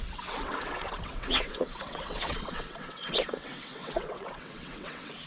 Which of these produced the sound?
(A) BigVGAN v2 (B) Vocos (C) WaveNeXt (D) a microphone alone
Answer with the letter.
C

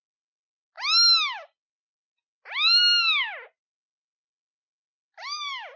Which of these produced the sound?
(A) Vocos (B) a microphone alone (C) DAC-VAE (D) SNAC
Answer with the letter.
B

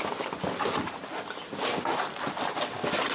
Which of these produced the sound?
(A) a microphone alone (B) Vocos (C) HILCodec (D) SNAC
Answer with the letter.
A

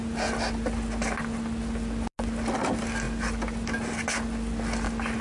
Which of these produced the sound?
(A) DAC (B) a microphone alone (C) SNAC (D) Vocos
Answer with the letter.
B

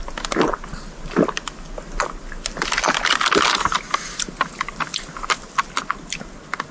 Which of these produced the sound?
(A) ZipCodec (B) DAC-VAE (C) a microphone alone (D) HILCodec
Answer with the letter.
C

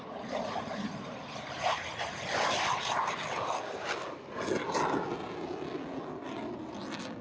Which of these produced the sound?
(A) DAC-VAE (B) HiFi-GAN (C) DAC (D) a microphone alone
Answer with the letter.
D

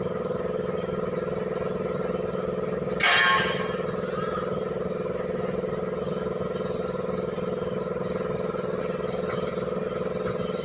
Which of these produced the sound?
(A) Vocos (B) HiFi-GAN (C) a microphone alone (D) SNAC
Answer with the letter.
C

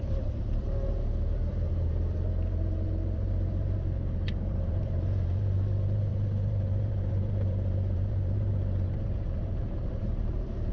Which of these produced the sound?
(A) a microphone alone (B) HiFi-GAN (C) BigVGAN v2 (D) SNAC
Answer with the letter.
C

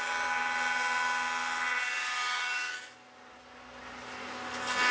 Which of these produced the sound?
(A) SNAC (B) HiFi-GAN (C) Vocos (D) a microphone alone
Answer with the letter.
D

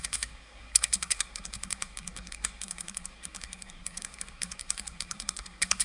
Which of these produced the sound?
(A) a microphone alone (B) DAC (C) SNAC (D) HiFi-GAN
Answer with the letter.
C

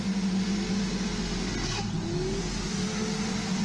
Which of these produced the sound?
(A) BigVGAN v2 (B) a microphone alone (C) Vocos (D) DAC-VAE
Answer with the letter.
B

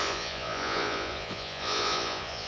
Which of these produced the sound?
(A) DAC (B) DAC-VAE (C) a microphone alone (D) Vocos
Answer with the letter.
D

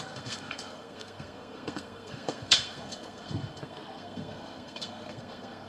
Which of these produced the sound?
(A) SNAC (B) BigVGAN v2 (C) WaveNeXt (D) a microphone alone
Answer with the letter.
A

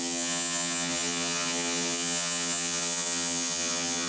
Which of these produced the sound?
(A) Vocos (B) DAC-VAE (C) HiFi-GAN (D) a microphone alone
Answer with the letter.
C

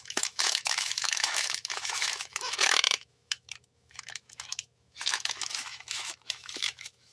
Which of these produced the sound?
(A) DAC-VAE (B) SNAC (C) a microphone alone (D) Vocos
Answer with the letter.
A